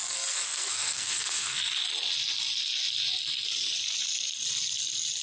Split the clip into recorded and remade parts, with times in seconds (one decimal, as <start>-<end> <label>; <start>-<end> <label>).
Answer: 0.0-1.7 remade; 1.7-5.2 recorded